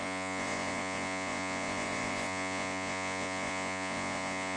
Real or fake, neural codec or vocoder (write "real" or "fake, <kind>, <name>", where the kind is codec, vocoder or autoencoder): fake, vocoder, Vocos